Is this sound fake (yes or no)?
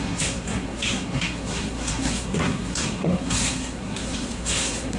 yes